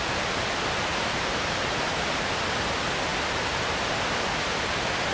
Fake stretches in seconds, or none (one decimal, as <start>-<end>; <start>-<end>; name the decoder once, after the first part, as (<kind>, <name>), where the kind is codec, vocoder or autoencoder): 0.9-2.3 (vocoder, BigVGAN v2)